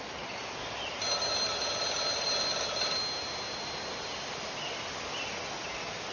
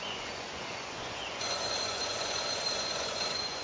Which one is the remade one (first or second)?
second